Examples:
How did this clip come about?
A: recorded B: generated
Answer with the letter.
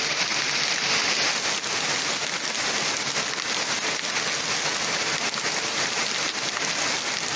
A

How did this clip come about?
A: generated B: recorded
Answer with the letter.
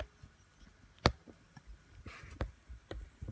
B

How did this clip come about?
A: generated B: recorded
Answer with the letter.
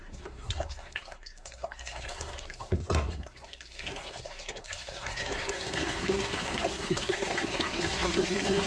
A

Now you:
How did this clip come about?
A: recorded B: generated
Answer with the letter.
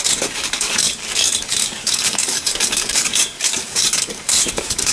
B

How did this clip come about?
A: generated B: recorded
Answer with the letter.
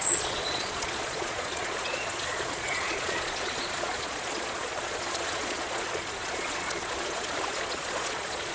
A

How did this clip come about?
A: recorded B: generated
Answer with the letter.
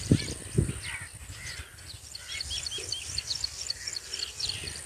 A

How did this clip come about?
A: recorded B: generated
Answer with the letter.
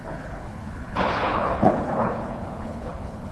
B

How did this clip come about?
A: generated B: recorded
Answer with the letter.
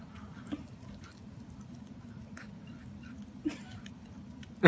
B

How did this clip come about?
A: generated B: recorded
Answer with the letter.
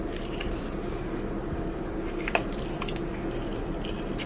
B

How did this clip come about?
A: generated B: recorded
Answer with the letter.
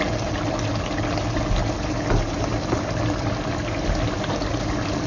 B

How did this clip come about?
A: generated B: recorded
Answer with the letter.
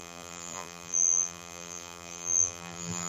A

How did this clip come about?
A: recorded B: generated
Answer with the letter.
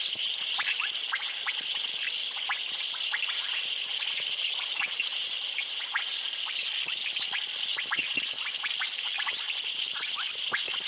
B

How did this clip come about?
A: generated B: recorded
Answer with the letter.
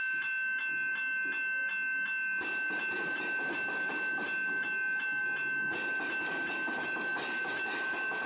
B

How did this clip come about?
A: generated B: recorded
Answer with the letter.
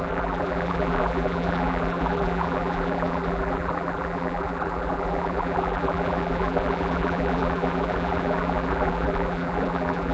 A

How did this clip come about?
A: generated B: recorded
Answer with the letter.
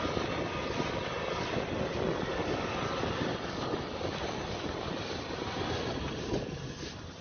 B